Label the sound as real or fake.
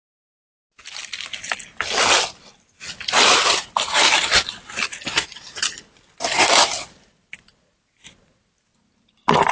real